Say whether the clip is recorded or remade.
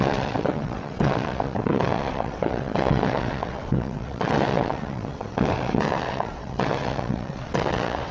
remade